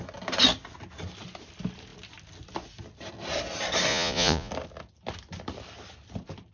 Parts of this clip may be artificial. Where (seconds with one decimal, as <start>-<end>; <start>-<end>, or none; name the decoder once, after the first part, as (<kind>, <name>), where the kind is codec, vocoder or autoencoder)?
3.9-4.5 (vocoder, Vocos)